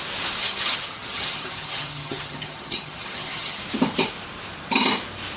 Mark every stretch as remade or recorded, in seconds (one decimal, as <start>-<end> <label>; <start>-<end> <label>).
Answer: 0.0-0.4 recorded; 0.4-3.6 remade; 3.6-5.4 recorded